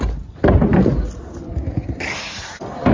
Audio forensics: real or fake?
real